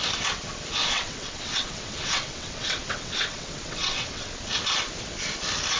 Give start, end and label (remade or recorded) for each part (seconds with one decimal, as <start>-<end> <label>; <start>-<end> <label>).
0.0-0.8 recorded; 0.8-4.3 remade; 4.3-5.8 recorded